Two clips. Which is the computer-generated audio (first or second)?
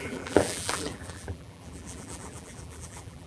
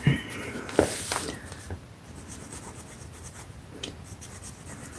first